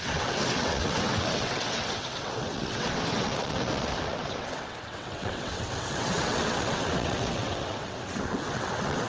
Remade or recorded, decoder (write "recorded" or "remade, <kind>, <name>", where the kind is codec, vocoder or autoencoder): remade, vocoder, WaveNeXt